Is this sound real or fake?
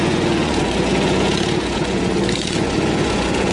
fake